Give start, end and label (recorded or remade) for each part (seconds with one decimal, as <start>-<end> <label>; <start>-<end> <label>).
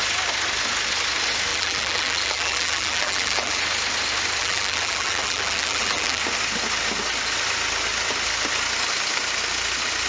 0.0-1.5 recorded; 1.5-3.6 remade; 3.6-4.4 recorded; 4.4-6.2 remade; 6.2-10.1 recorded